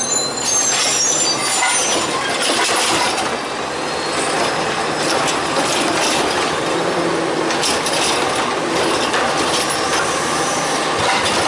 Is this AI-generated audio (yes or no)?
no